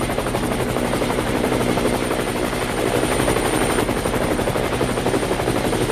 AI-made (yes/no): yes